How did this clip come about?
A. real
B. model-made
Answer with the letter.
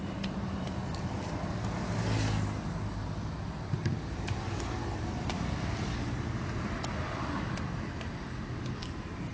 A